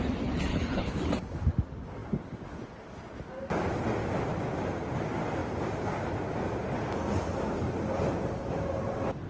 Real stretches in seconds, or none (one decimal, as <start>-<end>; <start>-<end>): 0.0-0.5; 1.1-9.3